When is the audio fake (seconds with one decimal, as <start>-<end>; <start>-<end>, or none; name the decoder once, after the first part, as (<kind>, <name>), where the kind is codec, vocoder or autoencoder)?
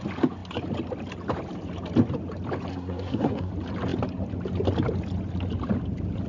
2.7-3.5 (codec, SNAC)